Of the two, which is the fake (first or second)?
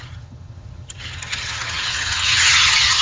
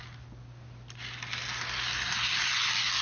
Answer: first